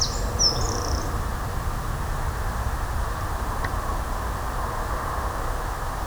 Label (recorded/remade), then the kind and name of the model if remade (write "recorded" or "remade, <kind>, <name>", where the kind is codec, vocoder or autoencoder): recorded